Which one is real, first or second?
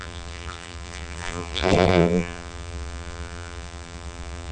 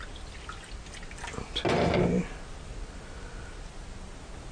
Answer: second